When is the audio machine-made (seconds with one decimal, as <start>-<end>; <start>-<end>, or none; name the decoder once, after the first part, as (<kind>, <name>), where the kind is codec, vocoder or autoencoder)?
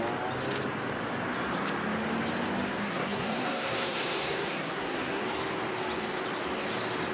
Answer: 2.7-5.2 (codec, SNAC)